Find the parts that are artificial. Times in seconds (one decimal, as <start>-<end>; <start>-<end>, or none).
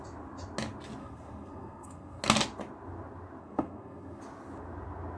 1.0-2.2; 3.4-4.2